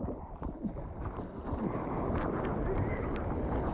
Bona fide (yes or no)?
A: yes